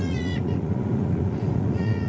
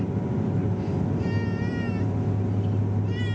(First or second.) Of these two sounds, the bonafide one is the second